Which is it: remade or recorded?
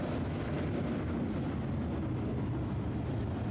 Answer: recorded